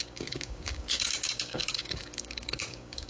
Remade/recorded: remade